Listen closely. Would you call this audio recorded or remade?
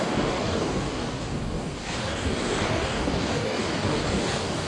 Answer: remade